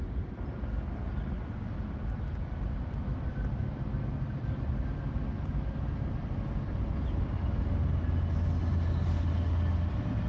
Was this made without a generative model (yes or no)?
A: yes